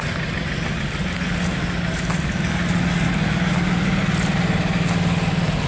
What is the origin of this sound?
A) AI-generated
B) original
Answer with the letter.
B